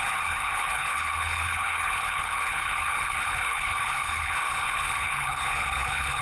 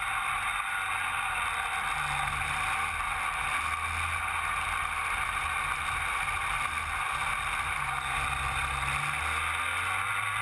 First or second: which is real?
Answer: second